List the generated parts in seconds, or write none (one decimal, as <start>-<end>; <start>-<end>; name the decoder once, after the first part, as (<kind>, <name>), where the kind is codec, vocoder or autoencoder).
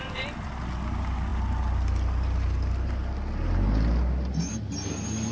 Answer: none